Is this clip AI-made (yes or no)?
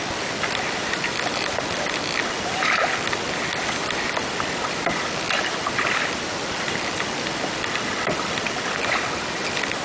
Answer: no